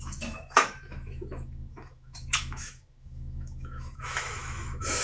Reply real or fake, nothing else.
fake